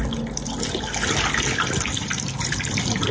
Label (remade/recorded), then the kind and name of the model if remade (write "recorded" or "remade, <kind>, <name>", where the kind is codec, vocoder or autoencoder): recorded